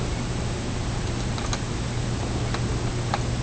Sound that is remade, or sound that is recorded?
recorded